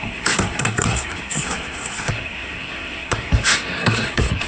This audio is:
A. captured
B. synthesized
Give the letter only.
B